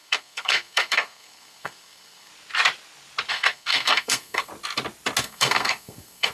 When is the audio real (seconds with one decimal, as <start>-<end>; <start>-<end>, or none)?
2.3-3.3; 4.5-5.2